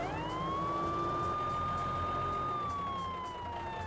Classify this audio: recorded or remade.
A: recorded